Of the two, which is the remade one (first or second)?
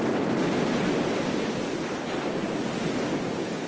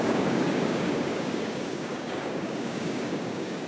second